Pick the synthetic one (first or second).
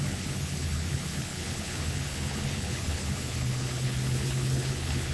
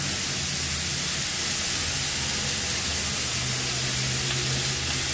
first